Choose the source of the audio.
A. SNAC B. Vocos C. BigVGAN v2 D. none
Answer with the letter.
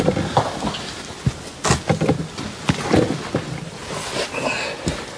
D